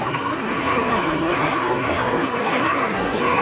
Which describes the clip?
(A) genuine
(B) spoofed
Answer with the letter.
B